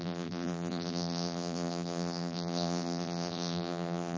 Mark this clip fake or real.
fake